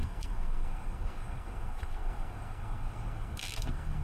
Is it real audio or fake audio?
fake